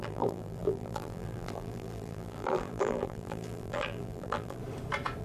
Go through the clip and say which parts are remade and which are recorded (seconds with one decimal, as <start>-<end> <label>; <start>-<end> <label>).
0.0-4.6 remade; 4.6-5.2 recorded